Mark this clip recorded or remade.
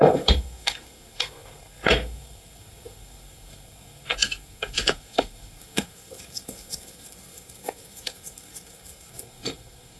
remade